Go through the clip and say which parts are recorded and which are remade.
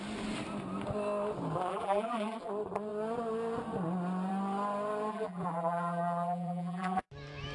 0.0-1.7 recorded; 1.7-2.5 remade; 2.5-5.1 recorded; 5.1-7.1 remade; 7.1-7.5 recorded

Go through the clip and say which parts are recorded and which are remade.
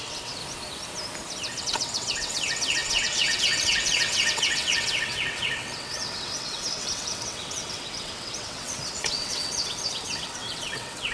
0.0-0.4 remade; 0.4-1.6 recorded; 1.6-11.1 remade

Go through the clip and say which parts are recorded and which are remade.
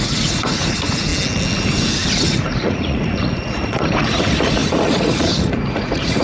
0.0-1.1 remade; 1.1-2.3 recorded; 2.3-6.2 remade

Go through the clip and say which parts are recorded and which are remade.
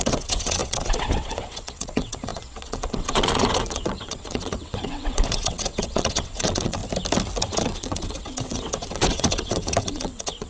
0.0-6.8 remade; 6.8-7.4 recorded; 7.4-10.5 remade